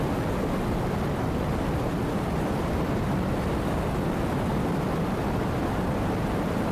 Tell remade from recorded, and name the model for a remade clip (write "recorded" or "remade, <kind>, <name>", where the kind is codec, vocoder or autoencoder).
recorded